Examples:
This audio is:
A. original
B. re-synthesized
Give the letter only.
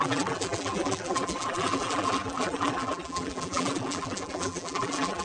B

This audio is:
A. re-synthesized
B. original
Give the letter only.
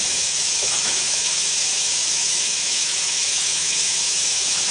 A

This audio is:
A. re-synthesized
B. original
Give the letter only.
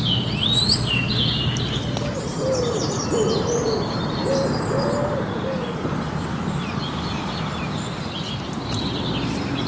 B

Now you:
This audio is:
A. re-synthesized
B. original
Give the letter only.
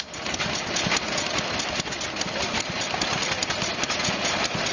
B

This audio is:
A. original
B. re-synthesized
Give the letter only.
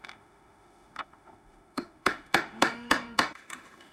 B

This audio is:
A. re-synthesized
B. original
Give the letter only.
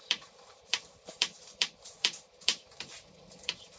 A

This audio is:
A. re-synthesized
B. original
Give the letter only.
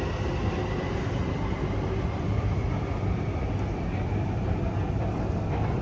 B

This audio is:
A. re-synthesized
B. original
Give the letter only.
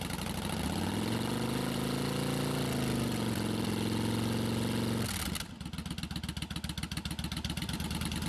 B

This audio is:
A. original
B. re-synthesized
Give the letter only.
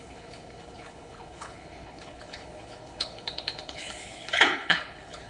B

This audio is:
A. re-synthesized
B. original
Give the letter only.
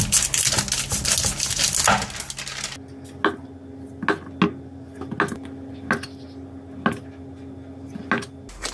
B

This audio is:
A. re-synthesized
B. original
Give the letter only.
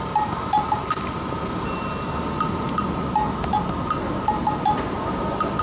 B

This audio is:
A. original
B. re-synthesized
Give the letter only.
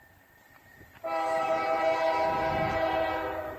A